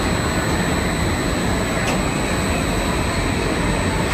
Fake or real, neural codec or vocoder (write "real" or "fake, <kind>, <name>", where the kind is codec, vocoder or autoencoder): real